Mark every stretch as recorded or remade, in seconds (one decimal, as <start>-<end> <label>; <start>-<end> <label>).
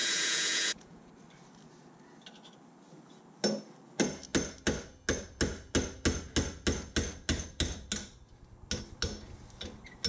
0.0-1.1 remade; 1.1-10.1 recorded